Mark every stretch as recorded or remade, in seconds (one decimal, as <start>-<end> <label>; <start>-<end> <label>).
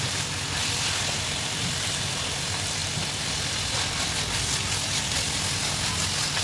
0.0-2.8 remade; 2.8-6.4 recorded